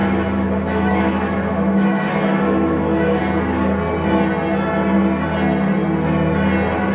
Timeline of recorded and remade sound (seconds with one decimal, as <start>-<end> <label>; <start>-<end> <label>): 0.0-3.2 remade; 3.2-6.9 recorded